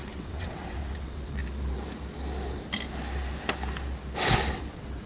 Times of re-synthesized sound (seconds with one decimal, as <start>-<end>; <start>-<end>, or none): 0.0-1.4; 4.5-5.1